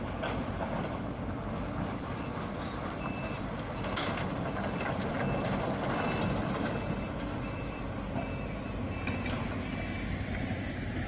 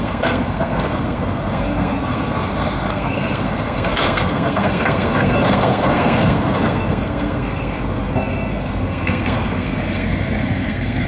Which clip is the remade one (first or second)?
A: second